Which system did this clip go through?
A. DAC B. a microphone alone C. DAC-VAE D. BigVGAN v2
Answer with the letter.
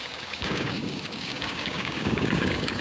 A